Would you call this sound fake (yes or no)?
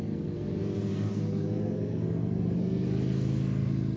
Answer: yes